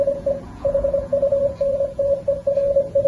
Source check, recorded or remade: remade